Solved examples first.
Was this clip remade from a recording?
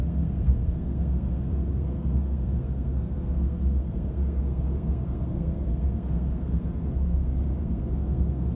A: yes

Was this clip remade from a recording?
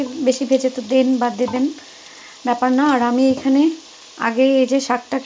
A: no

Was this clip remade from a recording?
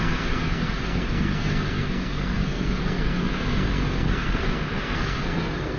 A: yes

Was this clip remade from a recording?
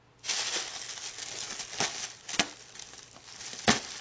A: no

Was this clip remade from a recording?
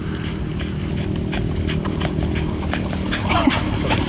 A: no